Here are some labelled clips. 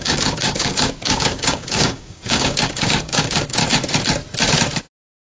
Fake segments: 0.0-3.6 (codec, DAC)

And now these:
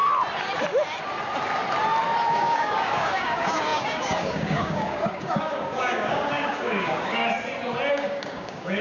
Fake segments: 2.3-7.2 (codec, DAC); 7.9-8.8

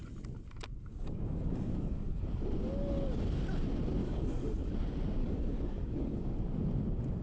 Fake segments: 0.9-2.2 (codec, DAC); 4.0-4.7; 5.2-6.4

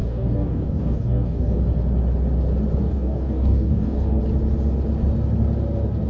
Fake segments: 0.0-1.6 (codec, DAC); 2.8-4.2

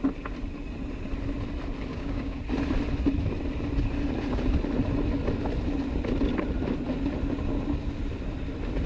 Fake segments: 1.9-2.4 (codec, DAC)

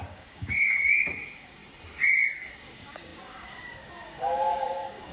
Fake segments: 0.0-1.6 (codec, DAC); 2.5-5.1

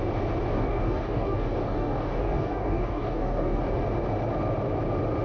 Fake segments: 0.5-3.6 (codec, DAC)

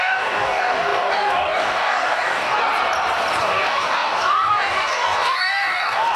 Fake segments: 0.0-2.6 (codec, DAC); 3.4-6.2